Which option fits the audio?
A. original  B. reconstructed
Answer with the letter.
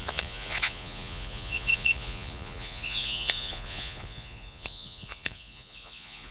B